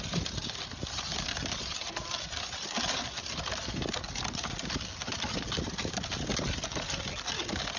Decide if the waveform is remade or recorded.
recorded